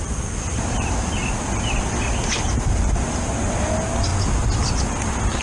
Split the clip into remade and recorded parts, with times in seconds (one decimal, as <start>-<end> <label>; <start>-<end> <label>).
0.0-5.4 recorded